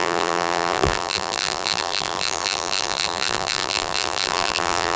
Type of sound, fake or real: fake